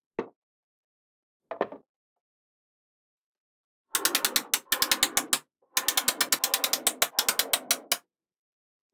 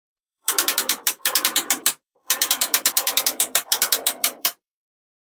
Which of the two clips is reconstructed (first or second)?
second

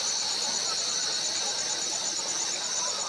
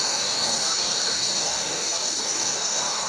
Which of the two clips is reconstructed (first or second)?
second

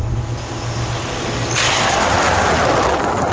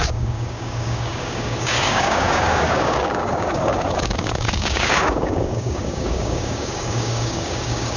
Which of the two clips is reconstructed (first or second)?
second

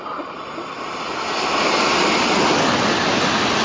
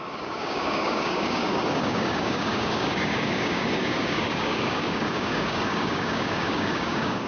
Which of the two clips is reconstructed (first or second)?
second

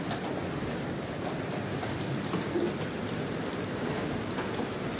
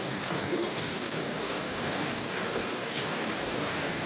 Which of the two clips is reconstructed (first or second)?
second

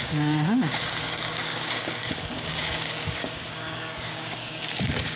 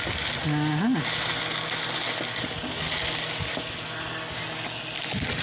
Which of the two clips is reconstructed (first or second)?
first